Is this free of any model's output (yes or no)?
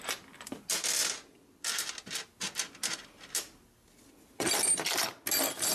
yes